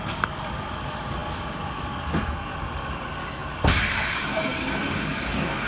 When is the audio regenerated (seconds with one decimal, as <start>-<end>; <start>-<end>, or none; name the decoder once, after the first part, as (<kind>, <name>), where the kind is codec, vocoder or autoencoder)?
0.0-5.7 (codec, DAC)